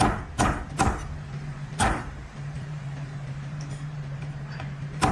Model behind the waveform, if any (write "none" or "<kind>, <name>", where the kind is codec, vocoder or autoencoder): vocoder, BigVGAN v2